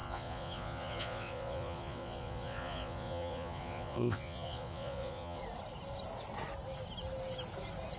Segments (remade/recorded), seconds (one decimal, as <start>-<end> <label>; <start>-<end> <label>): 0.0-5.4 remade; 5.4-8.0 recorded